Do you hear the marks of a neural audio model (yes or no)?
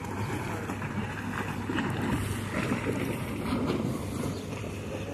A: no